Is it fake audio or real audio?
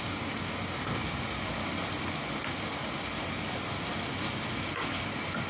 real